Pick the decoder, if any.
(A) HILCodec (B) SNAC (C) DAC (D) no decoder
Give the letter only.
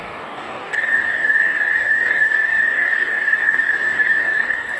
C